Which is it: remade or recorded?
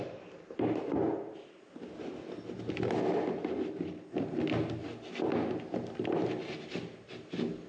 recorded